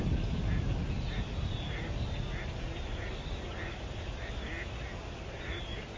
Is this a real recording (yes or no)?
yes